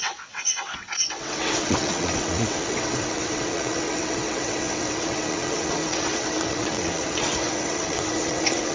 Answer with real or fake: fake